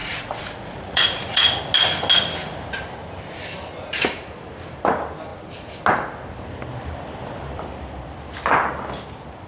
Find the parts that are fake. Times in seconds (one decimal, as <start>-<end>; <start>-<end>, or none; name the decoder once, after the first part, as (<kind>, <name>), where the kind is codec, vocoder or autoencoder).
0.0-1.6 (vocoder, Vocos)